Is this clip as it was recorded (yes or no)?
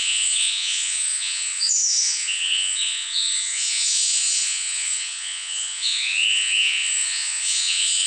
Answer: no